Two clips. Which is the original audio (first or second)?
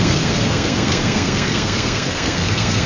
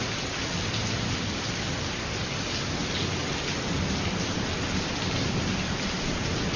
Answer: second